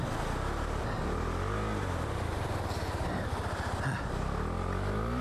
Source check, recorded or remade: recorded